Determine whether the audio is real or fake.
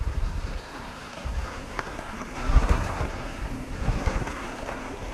fake